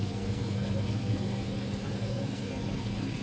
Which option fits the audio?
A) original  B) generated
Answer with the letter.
B